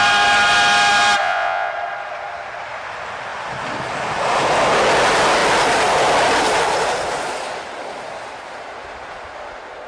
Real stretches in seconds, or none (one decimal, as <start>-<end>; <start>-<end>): 0.0-1.2; 1.7-9.9